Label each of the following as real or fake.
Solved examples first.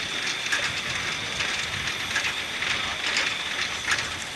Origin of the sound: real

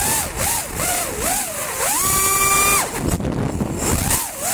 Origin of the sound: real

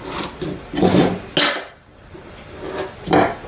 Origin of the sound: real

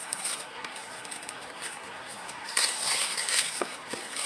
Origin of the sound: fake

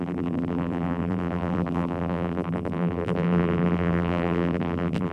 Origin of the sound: fake